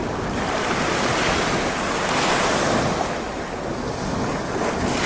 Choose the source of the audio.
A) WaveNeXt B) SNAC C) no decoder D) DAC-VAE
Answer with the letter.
C